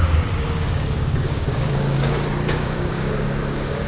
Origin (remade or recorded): remade